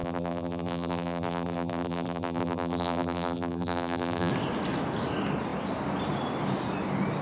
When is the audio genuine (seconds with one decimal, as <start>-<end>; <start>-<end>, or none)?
4.3-7.2